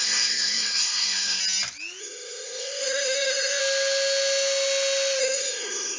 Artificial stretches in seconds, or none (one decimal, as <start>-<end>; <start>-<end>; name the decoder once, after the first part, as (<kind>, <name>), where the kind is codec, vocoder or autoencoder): 0.0-1.4 (codec, SNAC); 2.0-3.6; 5.2-6.0